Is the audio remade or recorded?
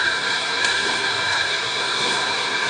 remade